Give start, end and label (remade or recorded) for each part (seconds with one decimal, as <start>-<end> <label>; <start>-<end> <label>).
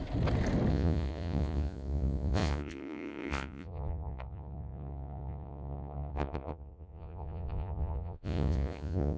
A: 0.0-0.7 recorded; 0.7-9.2 remade